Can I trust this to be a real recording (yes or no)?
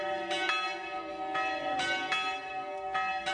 yes